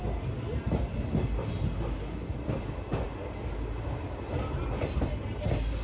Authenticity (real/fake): real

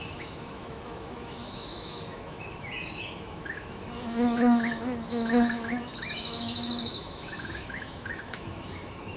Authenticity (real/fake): fake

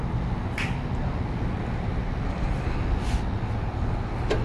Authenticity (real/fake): real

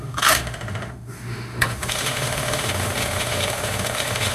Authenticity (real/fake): fake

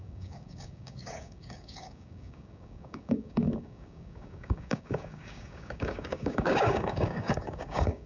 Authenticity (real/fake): fake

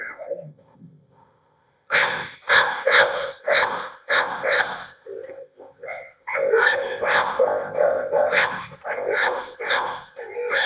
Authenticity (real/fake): fake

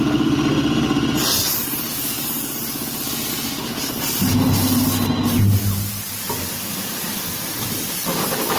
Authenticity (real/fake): real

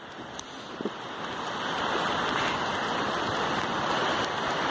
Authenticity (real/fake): real